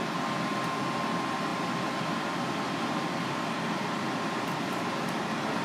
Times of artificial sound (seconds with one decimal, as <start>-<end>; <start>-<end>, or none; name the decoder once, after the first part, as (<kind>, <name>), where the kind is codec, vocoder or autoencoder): none

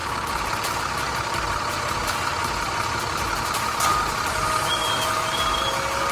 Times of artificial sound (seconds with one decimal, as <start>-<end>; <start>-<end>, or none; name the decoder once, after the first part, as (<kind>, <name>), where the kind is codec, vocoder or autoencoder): 0.0-0.8 (vocoder, BigVGAN v2); 2.0-3.9; 4.8-5.6

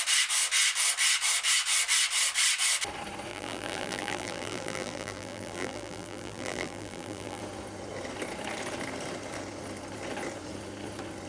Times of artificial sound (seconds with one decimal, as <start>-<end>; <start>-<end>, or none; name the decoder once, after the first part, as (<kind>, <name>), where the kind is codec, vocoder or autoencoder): 3.3-7.4 (vocoder, BigVGAN v2)

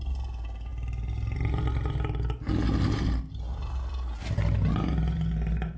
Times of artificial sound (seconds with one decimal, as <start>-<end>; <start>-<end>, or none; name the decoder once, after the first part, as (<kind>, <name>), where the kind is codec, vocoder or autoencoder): none